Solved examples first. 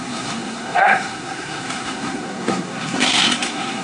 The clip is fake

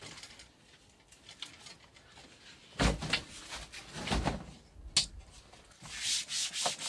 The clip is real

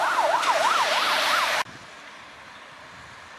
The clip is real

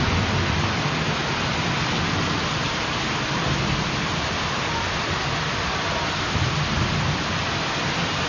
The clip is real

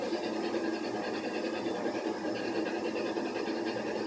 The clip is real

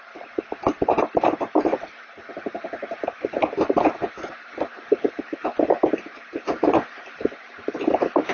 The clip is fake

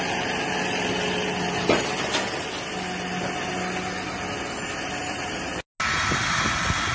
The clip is real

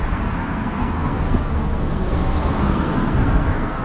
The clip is fake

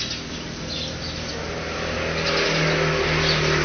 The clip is real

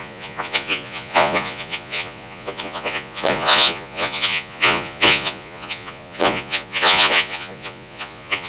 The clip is fake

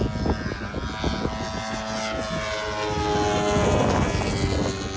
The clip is real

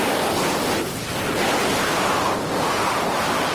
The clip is real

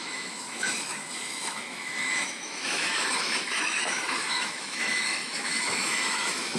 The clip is fake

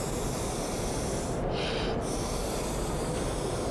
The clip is real